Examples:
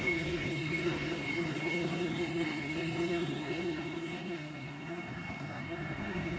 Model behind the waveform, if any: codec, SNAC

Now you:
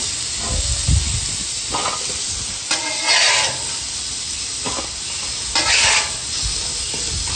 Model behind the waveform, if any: none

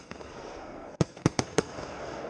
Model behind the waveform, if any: codec, SNAC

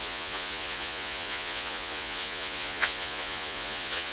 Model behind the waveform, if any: vocoder, Vocos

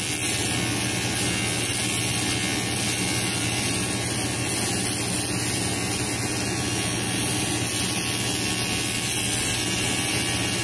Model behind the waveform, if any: none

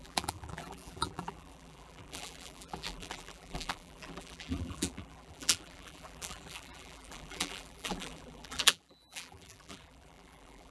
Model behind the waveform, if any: vocoder, BigVGAN v2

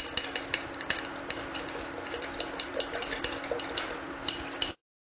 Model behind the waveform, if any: none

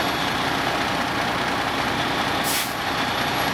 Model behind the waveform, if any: none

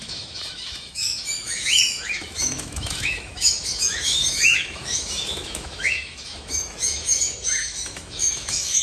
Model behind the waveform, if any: autoencoder, DAC-VAE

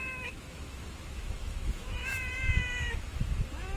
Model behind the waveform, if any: autoencoder, DAC-VAE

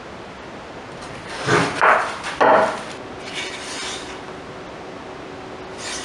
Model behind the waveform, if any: none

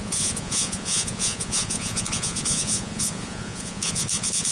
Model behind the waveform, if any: vocoder, Vocos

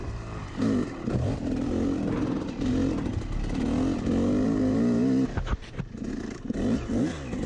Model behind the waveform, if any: none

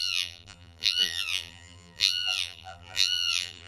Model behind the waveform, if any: vocoder, BigVGAN v2